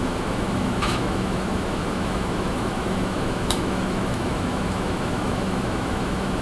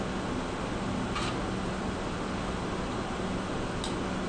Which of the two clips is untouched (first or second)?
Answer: second